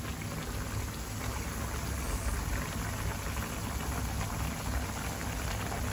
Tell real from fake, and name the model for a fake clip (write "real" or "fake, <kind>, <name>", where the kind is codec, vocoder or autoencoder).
real